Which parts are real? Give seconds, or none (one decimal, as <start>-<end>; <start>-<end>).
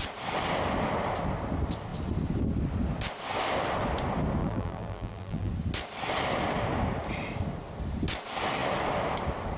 0.0-4.4; 5.5-9.6